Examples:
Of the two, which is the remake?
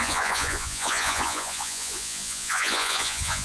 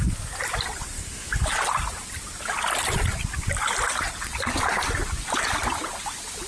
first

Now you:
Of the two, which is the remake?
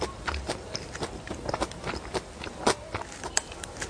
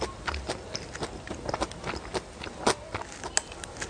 first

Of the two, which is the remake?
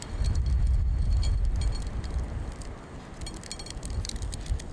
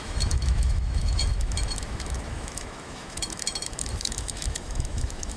second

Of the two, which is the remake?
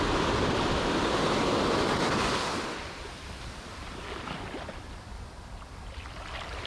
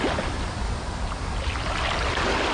first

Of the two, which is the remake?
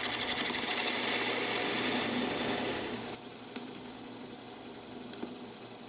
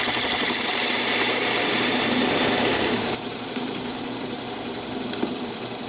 second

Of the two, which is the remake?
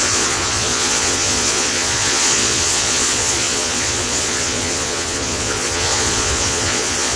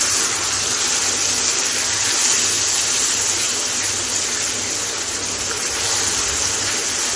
first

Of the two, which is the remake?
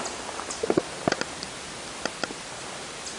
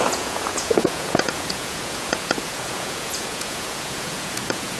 second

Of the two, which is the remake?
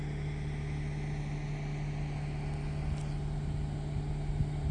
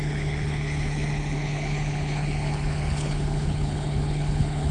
second